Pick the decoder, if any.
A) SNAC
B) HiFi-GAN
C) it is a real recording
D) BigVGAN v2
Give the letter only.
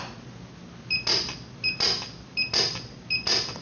C